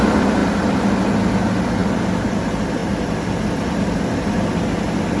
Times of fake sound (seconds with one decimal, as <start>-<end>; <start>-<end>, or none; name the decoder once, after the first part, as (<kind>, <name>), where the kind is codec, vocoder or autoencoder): 1.8-2.4 (vocoder, BigVGAN v2); 2.8-4.0